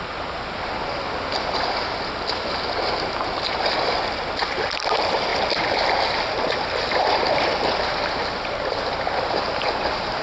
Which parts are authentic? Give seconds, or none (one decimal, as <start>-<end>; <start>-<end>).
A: 0.0-10.2